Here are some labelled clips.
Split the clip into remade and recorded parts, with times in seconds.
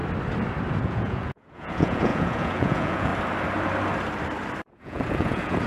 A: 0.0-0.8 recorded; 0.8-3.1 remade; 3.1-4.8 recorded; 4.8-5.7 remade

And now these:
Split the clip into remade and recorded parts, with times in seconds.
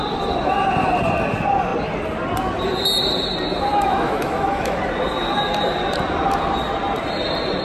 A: 0.0-3.7 recorded; 3.7-4.8 remade; 4.8-7.6 recorded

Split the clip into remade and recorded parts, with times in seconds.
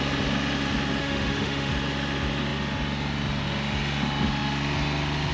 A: 0.0-1.0 recorded; 1.0-1.7 remade; 1.7-5.3 recorded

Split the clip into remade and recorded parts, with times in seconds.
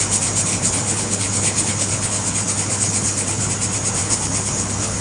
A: 0.0-0.5 recorded; 0.5-3.5 remade; 3.5-4.0 recorded; 4.0-5.0 remade